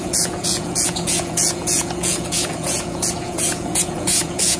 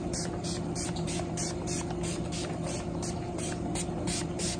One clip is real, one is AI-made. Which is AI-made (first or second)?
first